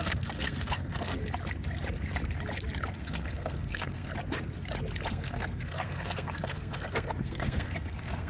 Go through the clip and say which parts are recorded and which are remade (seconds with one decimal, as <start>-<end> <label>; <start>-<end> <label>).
0.0-1.2 remade; 1.2-2.9 recorded; 2.9-4.1 remade; 4.1-5.1 recorded; 5.1-8.3 remade